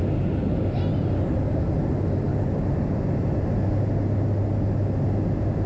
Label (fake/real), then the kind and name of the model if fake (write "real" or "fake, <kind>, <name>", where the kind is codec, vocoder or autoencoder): real